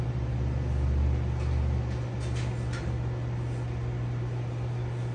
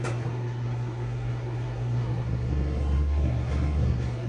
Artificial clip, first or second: second